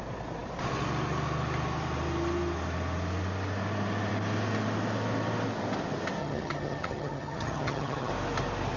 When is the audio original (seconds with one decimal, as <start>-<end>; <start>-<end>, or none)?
0.0-6.2; 8.1-8.8